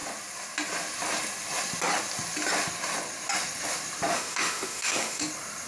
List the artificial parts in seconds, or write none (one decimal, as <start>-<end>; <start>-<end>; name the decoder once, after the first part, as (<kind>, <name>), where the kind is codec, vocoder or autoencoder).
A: 4.1-5.2 (autoencoder, DAC-VAE)